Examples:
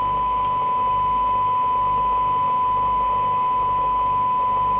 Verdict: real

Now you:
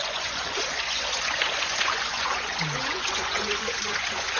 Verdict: fake